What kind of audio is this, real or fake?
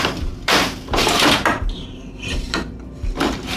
fake